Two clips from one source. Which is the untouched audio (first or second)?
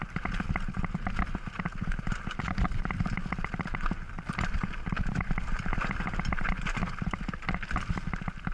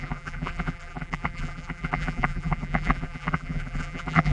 first